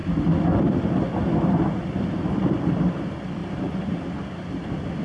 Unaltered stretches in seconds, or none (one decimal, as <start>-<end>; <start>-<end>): 0.0-5.0